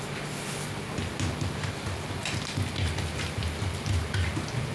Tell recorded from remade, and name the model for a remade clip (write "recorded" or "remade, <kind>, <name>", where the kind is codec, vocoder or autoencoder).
recorded